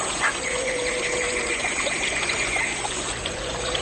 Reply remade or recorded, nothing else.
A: remade